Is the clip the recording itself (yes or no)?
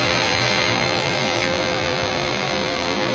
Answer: no